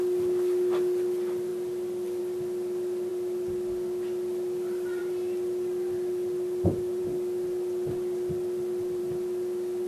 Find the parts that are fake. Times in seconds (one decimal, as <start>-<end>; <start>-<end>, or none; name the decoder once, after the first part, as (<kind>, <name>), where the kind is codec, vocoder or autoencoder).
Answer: none